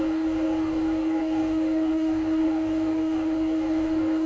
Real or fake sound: fake